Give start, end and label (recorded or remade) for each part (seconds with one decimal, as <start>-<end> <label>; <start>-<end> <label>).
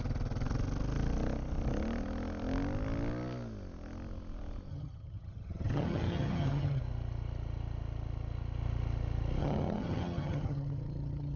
0.0-4.7 recorded; 4.7-6.8 remade; 6.8-9.4 recorded; 9.4-11.4 remade